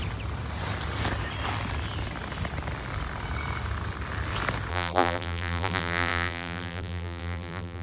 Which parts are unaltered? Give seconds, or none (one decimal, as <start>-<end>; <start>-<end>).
0.0-4.7